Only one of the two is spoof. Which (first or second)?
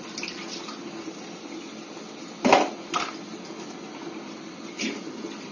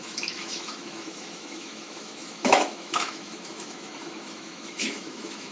second